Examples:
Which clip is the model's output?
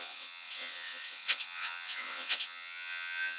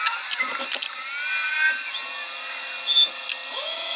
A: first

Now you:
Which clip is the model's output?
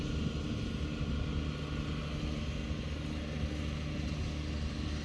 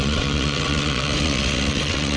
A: second